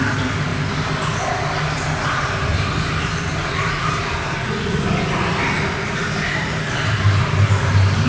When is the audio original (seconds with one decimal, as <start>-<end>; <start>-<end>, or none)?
0.0-8.1